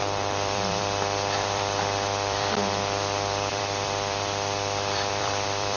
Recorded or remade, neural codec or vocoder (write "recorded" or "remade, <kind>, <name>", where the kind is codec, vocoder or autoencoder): remade, vocoder, BigVGAN v2